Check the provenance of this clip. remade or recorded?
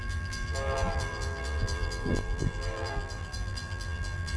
remade